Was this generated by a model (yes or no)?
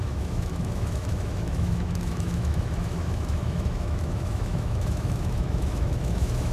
yes